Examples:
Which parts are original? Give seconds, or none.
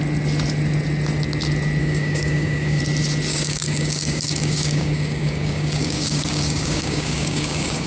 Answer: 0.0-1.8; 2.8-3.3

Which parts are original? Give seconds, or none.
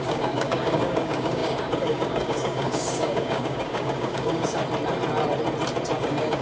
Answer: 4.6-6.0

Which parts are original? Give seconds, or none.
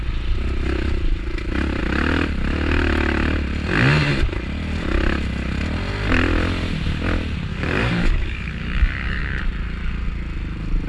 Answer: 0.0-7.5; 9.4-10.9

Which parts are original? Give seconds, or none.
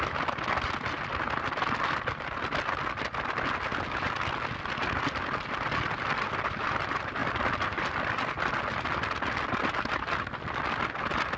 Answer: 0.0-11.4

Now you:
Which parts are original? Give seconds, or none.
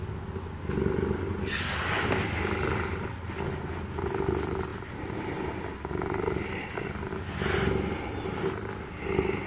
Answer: 0.0-9.5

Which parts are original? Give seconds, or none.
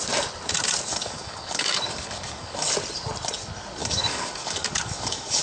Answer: 0.0-0.9; 2.7-3.8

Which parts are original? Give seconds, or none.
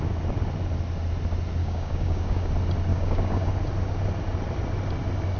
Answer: 0.0-1.6; 2.5-2.9; 3.5-5.4